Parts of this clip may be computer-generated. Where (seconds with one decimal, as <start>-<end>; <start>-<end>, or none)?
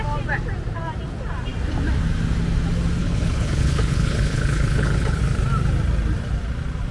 3.0-5.2